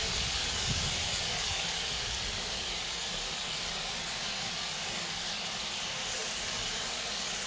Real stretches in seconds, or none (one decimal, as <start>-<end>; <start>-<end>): none